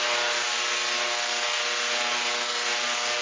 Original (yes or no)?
yes